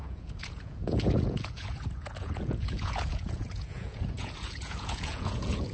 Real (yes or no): no